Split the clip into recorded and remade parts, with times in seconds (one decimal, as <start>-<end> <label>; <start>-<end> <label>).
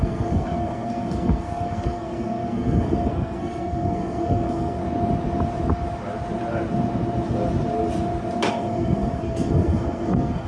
0.0-4.8 remade; 4.8-8.5 recorded; 8.5-10.5 remade